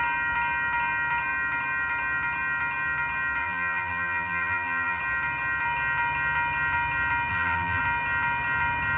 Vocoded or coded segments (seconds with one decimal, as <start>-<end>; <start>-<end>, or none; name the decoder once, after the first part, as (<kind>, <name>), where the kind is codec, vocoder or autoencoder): 3.4-5.0 (vocoder, BigVGAN v2); 7.3-7.8